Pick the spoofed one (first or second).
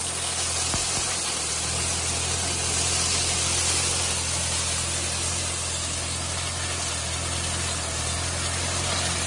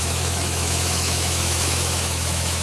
second